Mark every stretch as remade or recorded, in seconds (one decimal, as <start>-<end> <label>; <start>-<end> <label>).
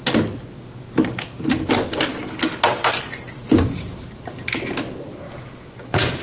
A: 0.0-5.4 recorded; 5.4-6.2 remade